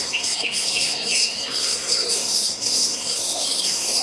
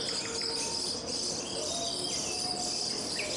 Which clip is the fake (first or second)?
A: first